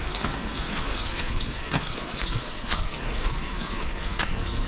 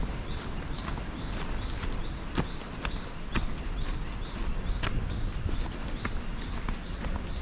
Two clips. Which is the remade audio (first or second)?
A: first